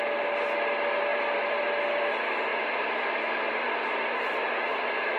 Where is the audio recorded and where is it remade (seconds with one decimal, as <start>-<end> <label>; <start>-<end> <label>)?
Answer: 0.0-1.1 recorded; 1.1-1.6 remade; 1.6-2.5 recorded; 2.5-5.2 remade